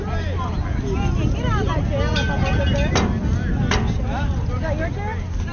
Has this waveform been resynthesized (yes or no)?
no